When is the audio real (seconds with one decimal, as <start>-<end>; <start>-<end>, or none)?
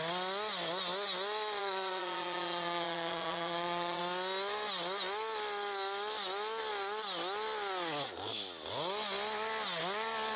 0.0-1.6; 4.0-10.4